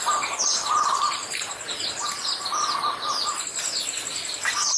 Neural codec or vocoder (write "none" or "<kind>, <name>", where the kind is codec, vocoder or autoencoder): none